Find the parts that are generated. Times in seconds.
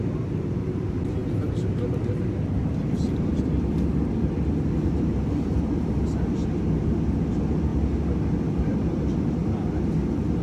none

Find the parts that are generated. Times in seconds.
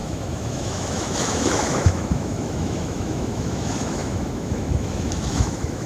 0.0-5.9 (autoencoder, DAC-VAE)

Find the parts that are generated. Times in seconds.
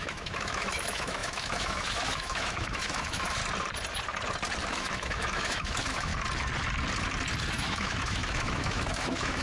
0.0-3.4 (autoencoder, DAC-VAE); 4.7-6.1; 7.5-9.4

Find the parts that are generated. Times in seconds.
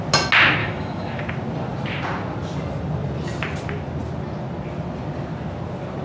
0.6-1.2 (autoencoder, DAC-VAE)